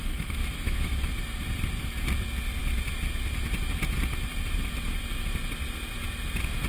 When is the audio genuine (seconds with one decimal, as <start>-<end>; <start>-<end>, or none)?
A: 1.1-6.7

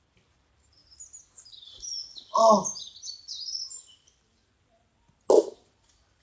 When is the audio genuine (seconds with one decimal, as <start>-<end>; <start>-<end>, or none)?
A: 0.0-6.2

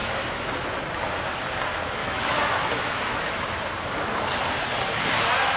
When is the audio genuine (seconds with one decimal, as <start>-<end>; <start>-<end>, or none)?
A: 0.5-2.0; 3.6-5.6

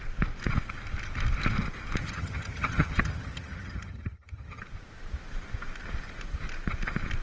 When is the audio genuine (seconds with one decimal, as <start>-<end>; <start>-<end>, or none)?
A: 0.0-2.0; 4.6-7.2

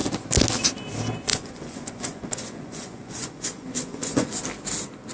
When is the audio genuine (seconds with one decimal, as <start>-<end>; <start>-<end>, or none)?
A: 0.0-1.3; 4.4-5.1